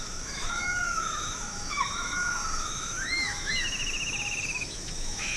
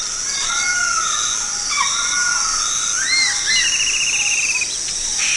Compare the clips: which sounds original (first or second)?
second